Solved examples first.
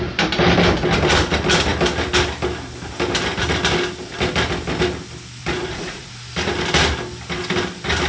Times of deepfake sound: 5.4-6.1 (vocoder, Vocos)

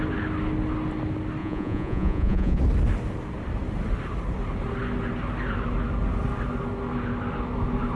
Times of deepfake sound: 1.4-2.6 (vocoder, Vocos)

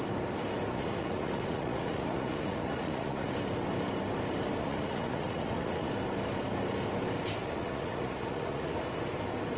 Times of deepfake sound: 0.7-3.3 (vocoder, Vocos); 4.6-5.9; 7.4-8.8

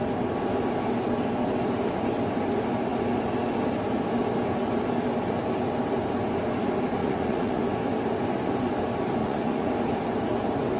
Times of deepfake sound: 7.0-7.6 (vocoder, Vocos); 9.2-9.7

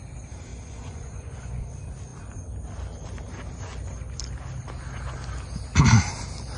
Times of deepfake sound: 0.5-1.7 (vocoder, Vocos)

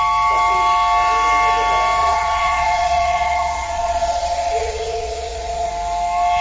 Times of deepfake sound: 2.0-5.7 (vocoder, Vocos)

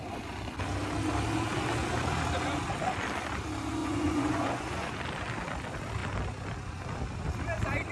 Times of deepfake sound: 3.8-4.9 (vocoder, Vocos)